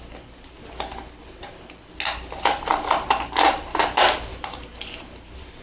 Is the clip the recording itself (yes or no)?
yes